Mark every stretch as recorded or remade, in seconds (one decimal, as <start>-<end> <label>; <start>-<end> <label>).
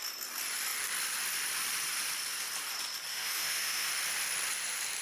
0.0-3.1 recorded; 3.1-3.9 remade; 3.9-5.0 recorded